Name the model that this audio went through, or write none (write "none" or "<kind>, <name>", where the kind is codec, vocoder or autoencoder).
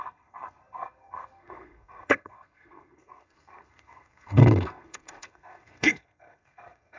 codec, SNAC